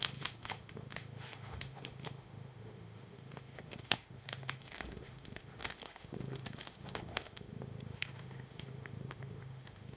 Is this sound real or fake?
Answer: fake